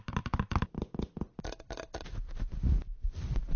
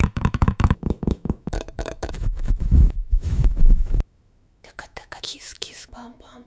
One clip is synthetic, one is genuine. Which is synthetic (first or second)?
second